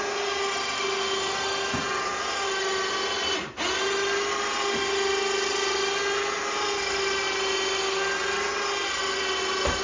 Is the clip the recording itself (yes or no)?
yes